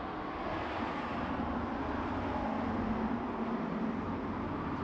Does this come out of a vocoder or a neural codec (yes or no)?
no